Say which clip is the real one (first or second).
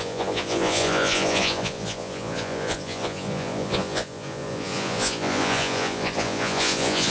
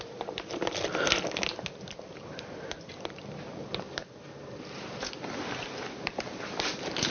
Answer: second